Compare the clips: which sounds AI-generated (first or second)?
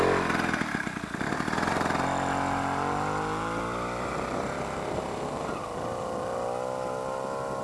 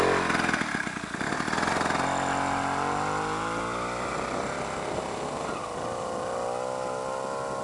first